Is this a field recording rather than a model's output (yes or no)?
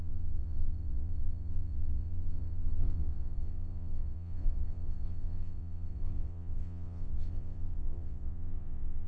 no